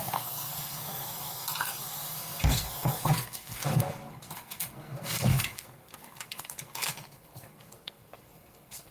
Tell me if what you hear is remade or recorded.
remade